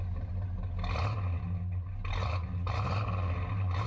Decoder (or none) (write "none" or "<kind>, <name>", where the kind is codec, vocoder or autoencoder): none